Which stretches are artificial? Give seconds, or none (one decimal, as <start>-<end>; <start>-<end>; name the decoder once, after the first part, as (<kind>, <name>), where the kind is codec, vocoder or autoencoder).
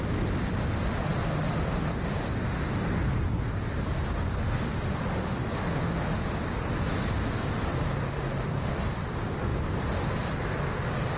none